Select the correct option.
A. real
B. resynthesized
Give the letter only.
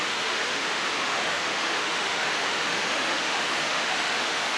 B